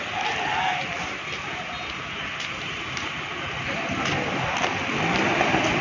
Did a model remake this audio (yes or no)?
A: no